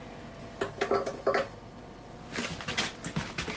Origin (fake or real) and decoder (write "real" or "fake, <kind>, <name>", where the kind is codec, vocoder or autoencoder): real